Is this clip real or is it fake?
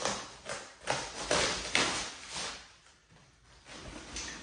real